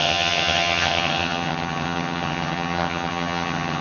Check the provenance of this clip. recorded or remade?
remade